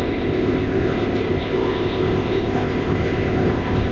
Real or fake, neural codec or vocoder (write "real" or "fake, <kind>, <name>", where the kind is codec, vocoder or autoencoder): fake, codec, ZipCodec